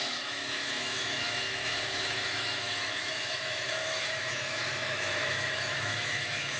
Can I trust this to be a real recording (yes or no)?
no